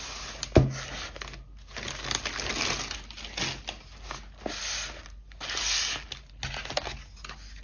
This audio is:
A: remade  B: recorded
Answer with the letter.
B